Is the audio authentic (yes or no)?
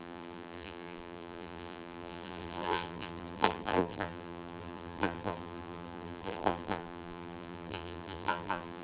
no